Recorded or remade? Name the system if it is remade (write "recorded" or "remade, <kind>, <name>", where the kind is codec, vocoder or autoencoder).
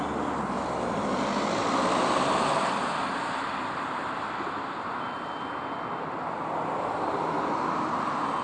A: recorded